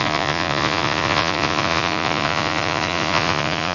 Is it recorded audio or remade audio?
remade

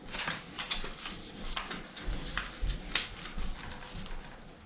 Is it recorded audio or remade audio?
recorded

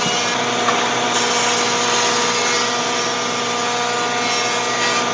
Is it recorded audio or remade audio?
recorded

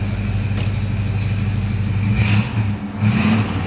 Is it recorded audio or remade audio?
recorded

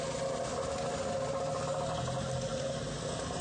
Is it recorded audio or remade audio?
recorded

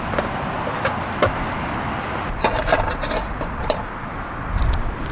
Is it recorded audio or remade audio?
recorded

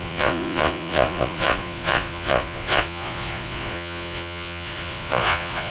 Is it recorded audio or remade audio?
remade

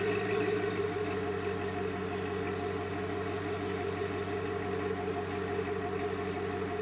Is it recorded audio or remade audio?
recorded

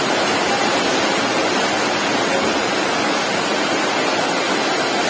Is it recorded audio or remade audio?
recorded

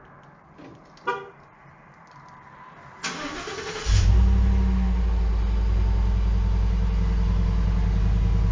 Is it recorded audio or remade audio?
recorded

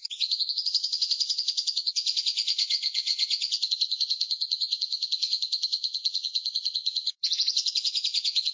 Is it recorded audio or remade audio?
remade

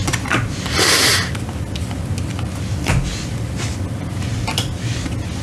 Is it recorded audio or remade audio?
recorded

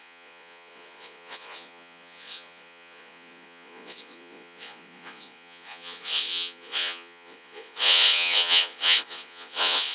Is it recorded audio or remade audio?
remade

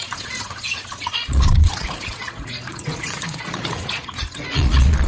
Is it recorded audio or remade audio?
remade